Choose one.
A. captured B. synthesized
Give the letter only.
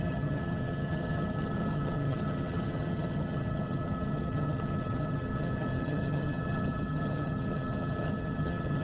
B